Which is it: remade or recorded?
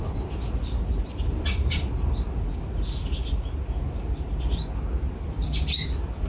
recorded